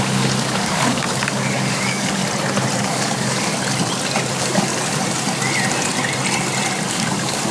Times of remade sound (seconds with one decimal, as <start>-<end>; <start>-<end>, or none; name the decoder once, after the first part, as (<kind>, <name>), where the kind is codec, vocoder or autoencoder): 0.0-2.2 (codec, DAC); 2.8-3.5; 4.3-4.7; 6.9-7.5